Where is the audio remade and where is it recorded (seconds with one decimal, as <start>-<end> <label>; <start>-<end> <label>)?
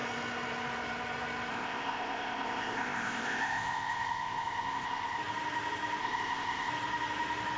0.0-1.5 recorded; 1.5-5.2 remade; 5.2-6.0 recorded; 6.0-6.7 remade; 6.7-7.6 recorded